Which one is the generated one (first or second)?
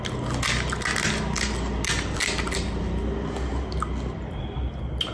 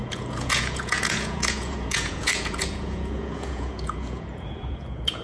second